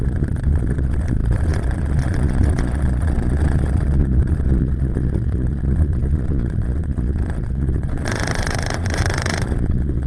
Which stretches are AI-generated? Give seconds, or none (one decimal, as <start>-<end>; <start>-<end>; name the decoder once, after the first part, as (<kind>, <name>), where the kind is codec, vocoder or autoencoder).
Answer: 0.0-10.1 (vocoder, Vocos)